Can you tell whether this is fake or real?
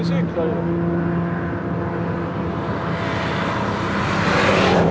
real